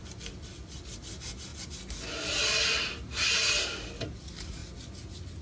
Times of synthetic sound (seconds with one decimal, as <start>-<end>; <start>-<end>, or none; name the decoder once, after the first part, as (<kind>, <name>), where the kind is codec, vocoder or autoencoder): none